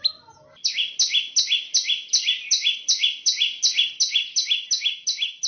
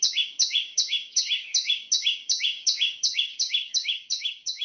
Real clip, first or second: first